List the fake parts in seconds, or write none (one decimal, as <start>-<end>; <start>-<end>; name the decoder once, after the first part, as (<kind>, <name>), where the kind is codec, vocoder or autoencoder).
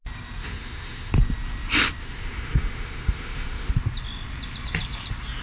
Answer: 0.4-1.1 (autoencoder, DAC-VAE); 2.0-3.7